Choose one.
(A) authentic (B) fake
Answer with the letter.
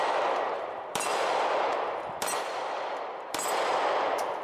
A